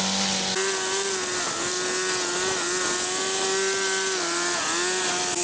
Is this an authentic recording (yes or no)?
yes